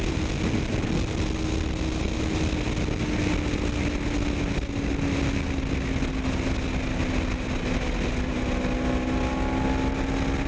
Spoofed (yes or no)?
no